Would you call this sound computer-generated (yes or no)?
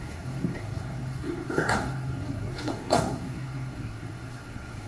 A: yes